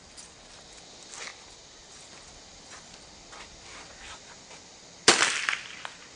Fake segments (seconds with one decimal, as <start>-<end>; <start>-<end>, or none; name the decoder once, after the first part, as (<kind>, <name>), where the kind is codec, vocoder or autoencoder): none